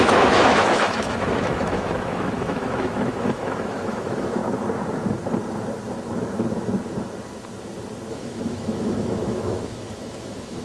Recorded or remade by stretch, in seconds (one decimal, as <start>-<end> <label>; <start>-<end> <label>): 0.0-4.4 remade; 4.4-8.1 recorded; 8.1-10.6 remade